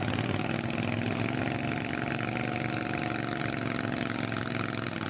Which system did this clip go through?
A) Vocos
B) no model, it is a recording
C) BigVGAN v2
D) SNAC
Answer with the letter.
B